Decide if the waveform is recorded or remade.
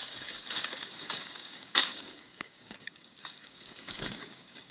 remade